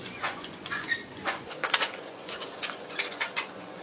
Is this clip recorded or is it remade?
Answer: remade